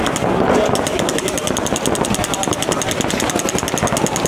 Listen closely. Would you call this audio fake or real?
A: real